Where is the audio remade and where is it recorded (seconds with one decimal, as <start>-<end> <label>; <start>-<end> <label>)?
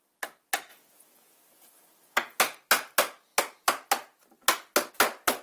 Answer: 0.0-0.7 recorded; 0.7-2.4 remade; 2.4-5.4 recorded